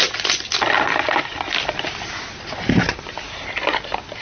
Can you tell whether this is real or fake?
real